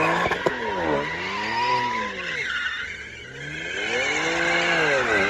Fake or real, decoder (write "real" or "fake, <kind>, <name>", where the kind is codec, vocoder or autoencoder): real